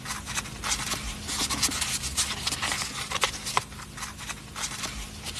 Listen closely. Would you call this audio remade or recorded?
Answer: recorded